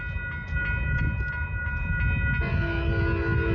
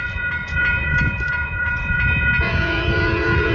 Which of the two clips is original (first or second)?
first